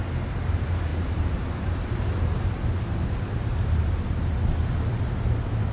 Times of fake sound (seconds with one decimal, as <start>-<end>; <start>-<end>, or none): 0.9-3.9